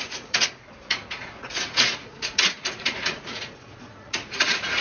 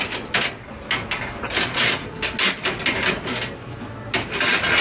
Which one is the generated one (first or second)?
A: first